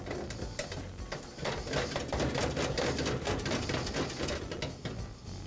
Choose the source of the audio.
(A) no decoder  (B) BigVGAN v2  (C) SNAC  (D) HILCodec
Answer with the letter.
A